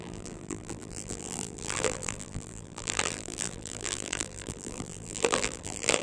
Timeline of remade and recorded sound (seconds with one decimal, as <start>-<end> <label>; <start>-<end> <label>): 0.0-6.0 remade